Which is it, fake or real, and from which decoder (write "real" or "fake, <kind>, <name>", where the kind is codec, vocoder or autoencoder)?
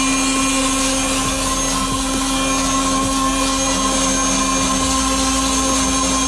real